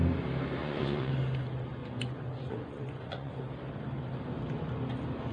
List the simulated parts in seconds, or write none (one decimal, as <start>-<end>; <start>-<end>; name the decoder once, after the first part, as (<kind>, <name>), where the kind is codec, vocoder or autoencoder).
0.6-1.1 (vocoder, Vocos); 1.8-3.3